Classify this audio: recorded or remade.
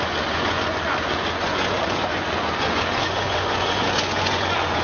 remade